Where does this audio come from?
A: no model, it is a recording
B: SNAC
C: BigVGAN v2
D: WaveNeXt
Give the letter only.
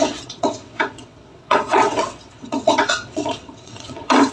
D